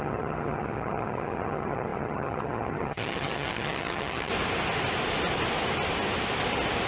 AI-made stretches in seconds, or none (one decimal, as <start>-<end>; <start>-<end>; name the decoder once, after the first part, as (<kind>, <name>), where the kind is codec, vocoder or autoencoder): 0.0-4.3 (vocoder, HiFi-GAN)